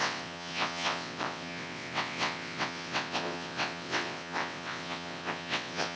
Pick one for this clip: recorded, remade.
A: remade